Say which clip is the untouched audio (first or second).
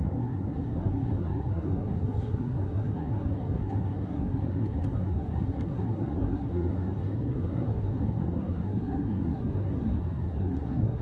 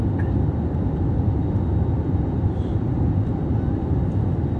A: second